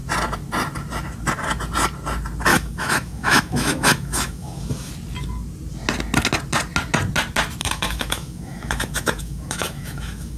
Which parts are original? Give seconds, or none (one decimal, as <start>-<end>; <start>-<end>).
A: 0.0-2.5; 4.9-7.6